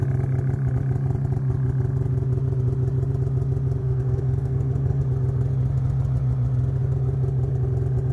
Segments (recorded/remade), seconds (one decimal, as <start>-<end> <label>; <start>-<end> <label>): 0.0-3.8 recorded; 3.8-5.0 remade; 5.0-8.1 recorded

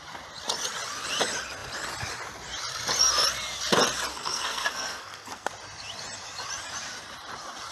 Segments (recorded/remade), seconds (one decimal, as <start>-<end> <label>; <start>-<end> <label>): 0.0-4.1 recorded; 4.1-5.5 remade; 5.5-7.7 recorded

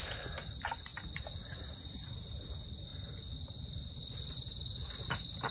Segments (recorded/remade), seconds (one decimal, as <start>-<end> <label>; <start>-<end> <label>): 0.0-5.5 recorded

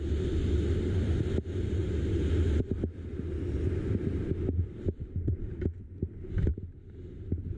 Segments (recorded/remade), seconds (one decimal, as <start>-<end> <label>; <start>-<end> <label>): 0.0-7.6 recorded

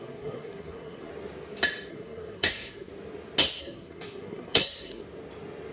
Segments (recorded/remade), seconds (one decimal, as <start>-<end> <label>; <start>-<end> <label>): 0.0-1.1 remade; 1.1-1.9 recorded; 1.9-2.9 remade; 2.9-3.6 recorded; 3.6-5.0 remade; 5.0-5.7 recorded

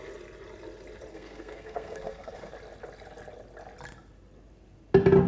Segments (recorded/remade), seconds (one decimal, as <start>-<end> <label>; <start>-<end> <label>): 0.0-1.1 recorded; 1.1-2.5 remade; 2.5-5.3 recorded

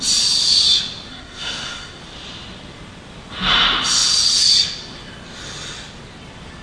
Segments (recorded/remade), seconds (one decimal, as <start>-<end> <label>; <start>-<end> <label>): 0.0-1.1 recorded; 1.1-2.0 remade; 2.0-6.6 recorded